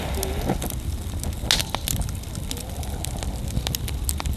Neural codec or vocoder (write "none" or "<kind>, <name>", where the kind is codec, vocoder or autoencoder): none